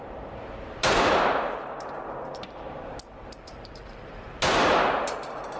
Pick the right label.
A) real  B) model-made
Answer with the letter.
B